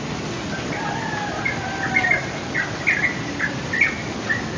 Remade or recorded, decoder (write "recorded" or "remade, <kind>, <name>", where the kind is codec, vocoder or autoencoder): recorded